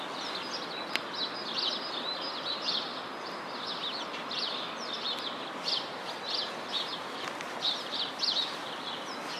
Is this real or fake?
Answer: real